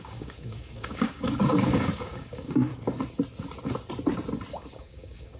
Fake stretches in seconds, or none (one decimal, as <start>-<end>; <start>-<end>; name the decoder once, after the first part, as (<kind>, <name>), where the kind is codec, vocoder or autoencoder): 0.0-2.7 (codec, DAC); 4.5-5.4